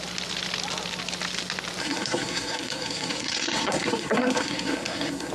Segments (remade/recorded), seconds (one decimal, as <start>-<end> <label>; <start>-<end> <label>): 0.0-1.8 recorded; 1.8-5.3 remade